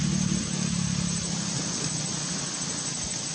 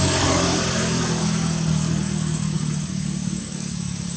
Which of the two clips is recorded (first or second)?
first